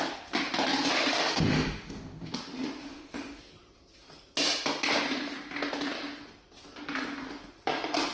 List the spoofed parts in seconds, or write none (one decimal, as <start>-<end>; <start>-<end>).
0.9-2.3; 2.8-3.4